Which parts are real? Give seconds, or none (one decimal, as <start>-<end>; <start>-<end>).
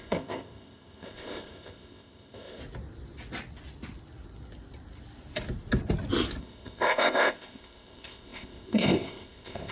2.6-6.4